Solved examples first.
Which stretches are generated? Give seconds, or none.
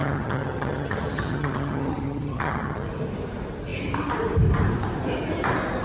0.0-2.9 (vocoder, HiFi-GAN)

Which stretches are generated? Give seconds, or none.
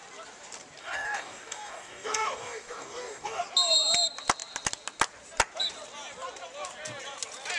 0.8-3.4 (codec, DAC)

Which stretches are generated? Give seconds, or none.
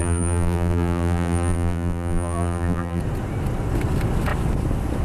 0.0-3.0 (vocoder, BigVGAN v2)